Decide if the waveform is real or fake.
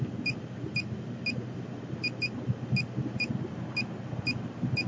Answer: real